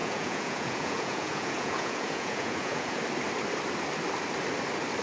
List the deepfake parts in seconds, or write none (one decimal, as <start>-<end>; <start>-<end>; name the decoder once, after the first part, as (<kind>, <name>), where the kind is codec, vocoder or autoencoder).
0.0-3.0 (vocoder, Vocos)